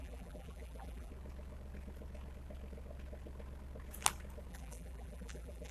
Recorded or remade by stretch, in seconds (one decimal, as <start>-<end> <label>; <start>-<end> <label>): 0.0-1.1 remade; 1.1-4.5 recorded; 4.5-5.7 remade